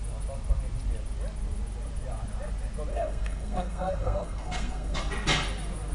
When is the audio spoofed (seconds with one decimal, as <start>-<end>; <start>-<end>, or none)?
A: 2.9-5.0